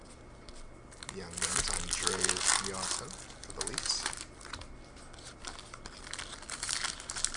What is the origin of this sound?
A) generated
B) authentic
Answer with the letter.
B